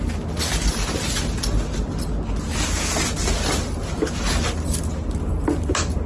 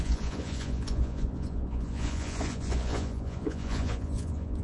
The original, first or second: first